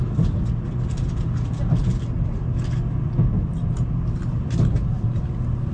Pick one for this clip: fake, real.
real